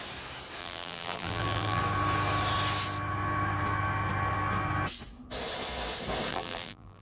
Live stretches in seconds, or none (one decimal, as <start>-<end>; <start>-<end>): 0.0-0.6; 1.8-6.3